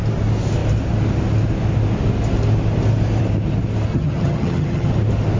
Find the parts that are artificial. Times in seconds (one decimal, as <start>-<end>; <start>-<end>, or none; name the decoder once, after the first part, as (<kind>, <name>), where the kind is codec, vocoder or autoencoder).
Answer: 3.9-4.9 (vocoder, HiFi-GAN)